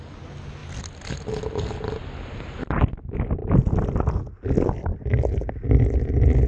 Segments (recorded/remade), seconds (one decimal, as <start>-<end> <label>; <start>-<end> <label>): 0.0-6.5 recorded